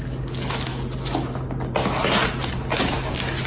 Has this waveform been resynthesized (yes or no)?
no